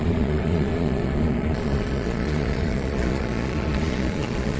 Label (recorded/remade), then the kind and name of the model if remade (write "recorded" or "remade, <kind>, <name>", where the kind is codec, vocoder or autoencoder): remade, vocoder, Vocos